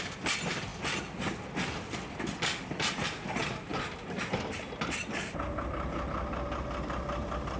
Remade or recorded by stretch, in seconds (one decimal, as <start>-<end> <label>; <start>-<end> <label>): 0.0-7.6 recorded